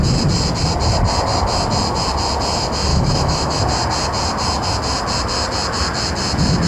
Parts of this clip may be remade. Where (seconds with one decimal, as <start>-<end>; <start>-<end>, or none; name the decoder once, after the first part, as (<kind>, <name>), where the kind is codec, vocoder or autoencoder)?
2.9-3.6 (autoencoder, DAC-VAE)